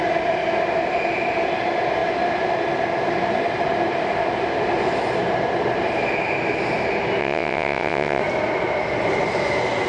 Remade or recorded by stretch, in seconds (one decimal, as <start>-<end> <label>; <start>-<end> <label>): 0.0-7.2 recorded; 7.2-8.2 remade; 8.2-9.9 recorded